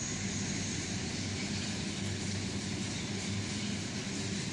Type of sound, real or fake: real